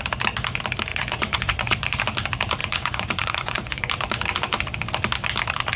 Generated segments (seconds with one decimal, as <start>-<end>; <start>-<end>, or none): 0.9-2.0; 2.6-3.9